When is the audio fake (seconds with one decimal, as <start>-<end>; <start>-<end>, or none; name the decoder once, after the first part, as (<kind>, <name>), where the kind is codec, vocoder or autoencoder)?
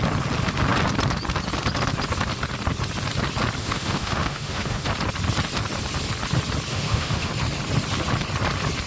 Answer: 3.6-4.9 (autoencoder, DAC-VAE); 6.7-7.3